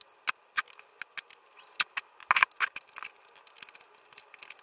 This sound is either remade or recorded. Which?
recorded